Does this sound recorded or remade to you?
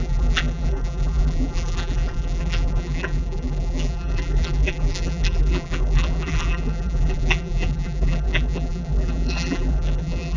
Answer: remade